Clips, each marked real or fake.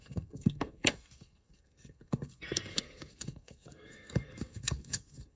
fake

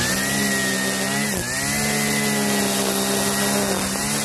real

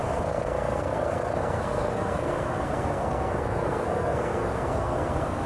fake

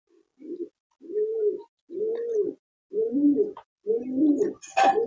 real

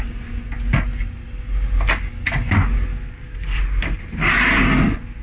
real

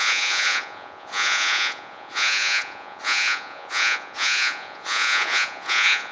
fake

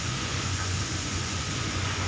fake